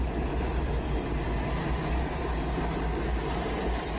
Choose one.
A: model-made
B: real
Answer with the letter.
B